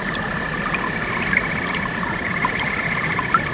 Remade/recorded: recorded